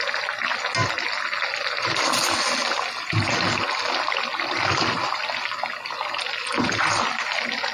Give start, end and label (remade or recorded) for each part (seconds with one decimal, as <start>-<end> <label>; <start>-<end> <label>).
0.0-7.7 recorded